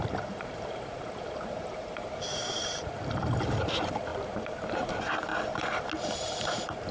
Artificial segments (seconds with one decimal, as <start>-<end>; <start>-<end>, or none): 0.0-4.1; 4.7-5.3; 6.0-6.9